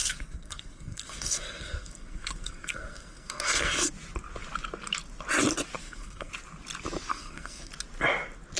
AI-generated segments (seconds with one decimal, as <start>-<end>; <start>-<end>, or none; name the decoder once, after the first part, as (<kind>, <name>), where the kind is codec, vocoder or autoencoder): 0.0-3.9 (codec, SNAC); 5.8-6.3; 7.1-7.7